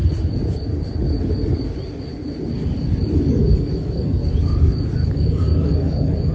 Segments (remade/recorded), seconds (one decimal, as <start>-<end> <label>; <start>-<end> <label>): 0.0-3.3 recorded; 3.3-4.2 remade; 4.2-5.1 recorded; 5.1-6.3 remade